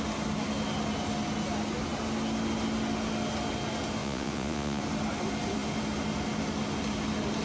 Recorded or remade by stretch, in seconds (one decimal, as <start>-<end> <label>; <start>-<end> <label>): 0.0-4.0 recorded; 4.0-4.8 remade; 4.8-7.4 recorded